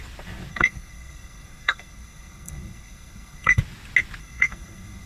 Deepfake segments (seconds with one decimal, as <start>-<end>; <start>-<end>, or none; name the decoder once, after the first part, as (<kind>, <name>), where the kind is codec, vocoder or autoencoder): 0.5-3.6 (codec, SNAC); 4.2-5.1